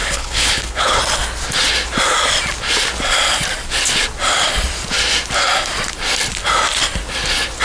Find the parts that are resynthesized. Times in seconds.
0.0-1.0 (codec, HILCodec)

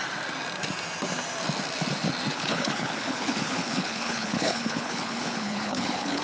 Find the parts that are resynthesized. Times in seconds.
2.3-6.2 (codec, HILCodec)